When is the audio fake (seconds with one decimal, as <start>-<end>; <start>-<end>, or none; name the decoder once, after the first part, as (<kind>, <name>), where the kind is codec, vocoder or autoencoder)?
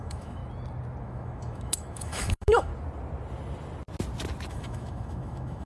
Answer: 0.0-0.4 (autoencoder, DAC-VAE); 1.0-2.7; 4.5-5.6